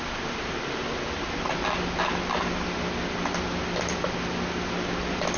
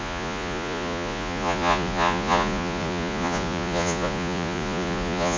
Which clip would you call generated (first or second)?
second